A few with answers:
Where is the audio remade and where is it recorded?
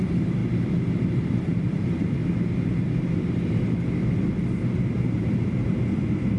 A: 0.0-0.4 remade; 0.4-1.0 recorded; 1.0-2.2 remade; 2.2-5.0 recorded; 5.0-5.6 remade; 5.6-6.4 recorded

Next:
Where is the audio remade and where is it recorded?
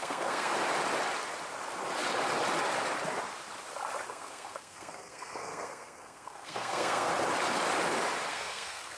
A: 0.0-0.5 remade; 0.5-4.1 recorded; 4.1-7.1 remade; 7.1-8.3 recorded; 8.3-9.0 remade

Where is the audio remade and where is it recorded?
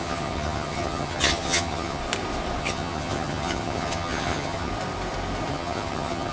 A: 0.0-2.0 remade; 2.0-2.6 recorded; 2.6-4.7 remade; 4.7-5.5 recorded; 5.5-6.3 remade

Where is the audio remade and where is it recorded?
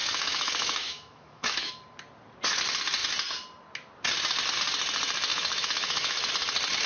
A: 0.0-1.7 remade; 1.7-5.3 recorded; 5.3-6.3 remade; 6.3-6.9 recorded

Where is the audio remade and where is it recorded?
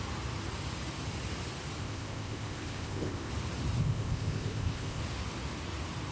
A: 0.0-1.8 recorded; 1.8-3.3 remade; 3.3-3.8 recorded; 3.8-5.0 remade; 5.0-6.1 recorded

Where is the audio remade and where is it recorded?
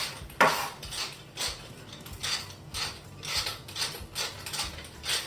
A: 0.0-5.3 recorded